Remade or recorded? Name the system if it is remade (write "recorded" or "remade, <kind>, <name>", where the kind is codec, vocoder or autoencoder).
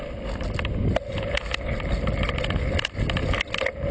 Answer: recorded